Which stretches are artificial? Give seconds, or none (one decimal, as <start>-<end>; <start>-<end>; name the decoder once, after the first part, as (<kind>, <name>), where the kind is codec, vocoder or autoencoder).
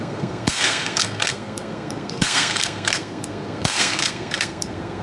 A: 0.0-5.0 (codec, SNAC)